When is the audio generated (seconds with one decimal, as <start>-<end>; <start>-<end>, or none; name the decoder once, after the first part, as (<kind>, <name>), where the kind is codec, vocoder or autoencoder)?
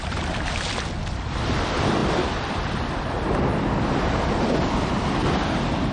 none